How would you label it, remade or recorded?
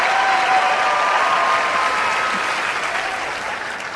recorded